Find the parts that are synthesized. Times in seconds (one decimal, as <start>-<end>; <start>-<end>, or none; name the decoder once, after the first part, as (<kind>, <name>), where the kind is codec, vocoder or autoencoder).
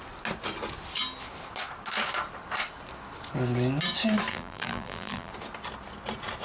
4.3-5.3 (vocoder, BigVGAN v2)